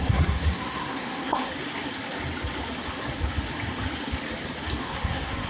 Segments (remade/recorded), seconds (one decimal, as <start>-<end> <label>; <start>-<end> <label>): 0.0-1.5 remade; 1.5-4.8 recorded; 4.8-5.5 remade